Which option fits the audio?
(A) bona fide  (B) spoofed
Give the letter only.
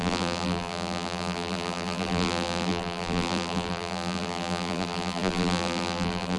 B